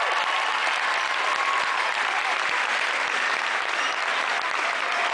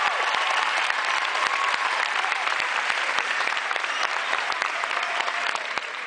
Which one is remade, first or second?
second